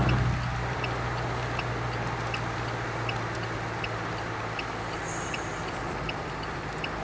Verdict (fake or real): real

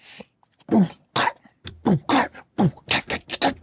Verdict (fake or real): real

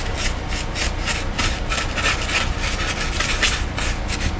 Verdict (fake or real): real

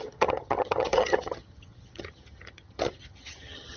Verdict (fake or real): fake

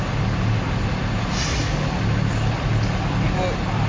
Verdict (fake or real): real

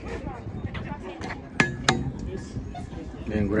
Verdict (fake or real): real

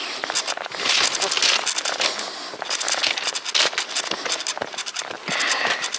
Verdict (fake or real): real